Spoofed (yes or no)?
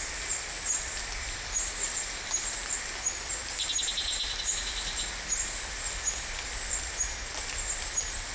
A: no